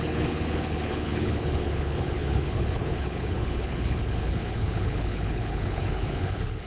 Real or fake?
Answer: fake